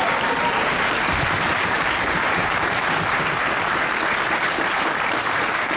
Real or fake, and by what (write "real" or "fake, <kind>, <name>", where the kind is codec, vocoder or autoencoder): fake, vocoder, BigVGAN v2